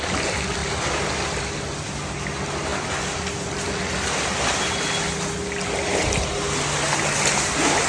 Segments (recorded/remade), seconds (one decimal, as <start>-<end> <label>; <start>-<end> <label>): 0.0-7.9 recorded